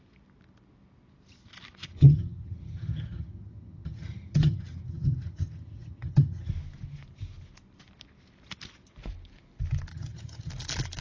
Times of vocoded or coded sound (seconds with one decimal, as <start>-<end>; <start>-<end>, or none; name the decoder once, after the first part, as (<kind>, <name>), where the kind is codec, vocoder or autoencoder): 1.9-6.5 (vocoder, HiFi-GAN); 9.9-10.5